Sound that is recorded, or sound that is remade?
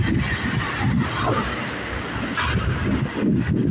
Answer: recorded